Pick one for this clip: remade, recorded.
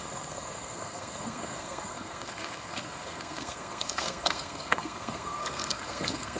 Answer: remade